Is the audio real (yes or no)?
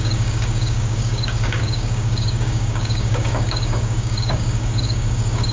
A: no